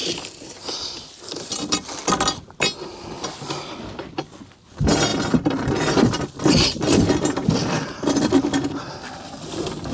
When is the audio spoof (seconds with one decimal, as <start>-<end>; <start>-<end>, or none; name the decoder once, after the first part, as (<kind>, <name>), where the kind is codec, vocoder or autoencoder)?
0.0-2.1 (vocoder, BigVGAN v2); 5.1-7.1; 7.6-9.3